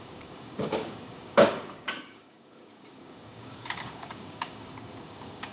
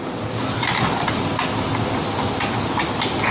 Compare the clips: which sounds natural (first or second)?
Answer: second